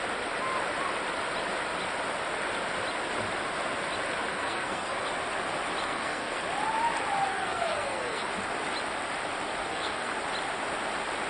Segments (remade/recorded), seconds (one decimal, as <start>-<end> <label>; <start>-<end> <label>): 0.0-4.3 recorded; 4.3-5.1 remade; 5.1-5.8 recorded; 5.8-6.4 remade; 6.4-7.3 recorded; 7.3-8.3 remade; 8.3-9.6 recorded; 9.6-10.1 remade; 10.1-11.3 recorded